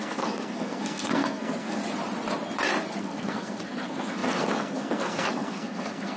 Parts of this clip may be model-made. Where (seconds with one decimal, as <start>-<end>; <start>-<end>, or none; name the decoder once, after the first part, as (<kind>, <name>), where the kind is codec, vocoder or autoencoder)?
0.0-1.8 (codec, SNAC); 3.0-6.2